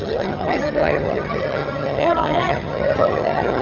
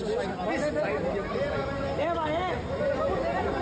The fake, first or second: first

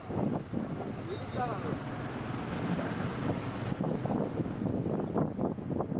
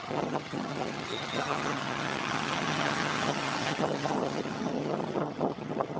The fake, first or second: second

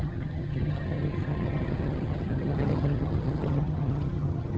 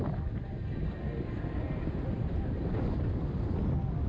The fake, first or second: first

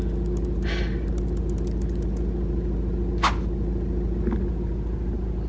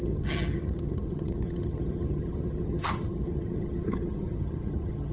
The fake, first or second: second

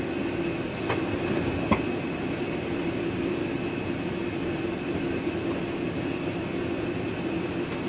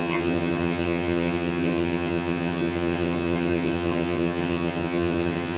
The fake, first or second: second